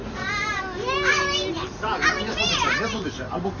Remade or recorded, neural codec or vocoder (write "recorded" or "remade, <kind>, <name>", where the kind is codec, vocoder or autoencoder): recorded